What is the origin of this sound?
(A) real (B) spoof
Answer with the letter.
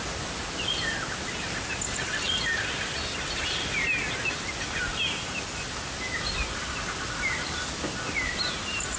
A